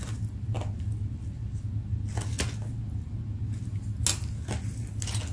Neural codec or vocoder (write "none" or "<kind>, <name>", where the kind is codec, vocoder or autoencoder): none